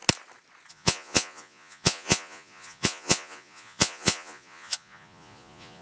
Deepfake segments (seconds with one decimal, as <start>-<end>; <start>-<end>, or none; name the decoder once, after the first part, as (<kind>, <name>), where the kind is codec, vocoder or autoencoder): 0.7-5.8 (vocoder, Vocos)